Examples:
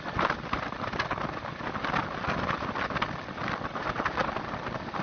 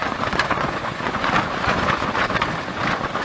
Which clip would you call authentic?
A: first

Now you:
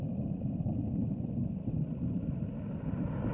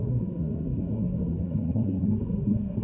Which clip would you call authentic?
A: first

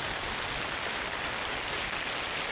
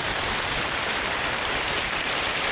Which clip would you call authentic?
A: first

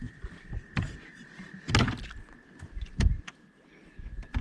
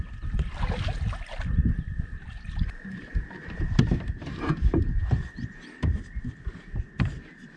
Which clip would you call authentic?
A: first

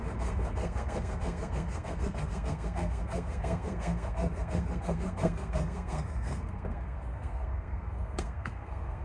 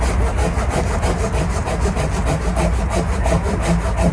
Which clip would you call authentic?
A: second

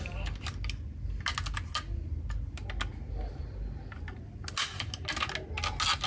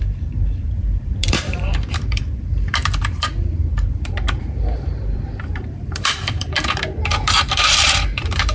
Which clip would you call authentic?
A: first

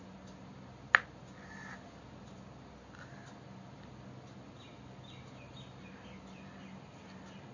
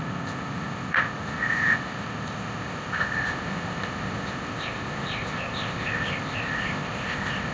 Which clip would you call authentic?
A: first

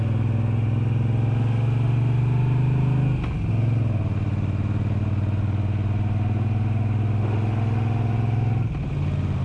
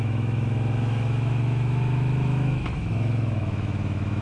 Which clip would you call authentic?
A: first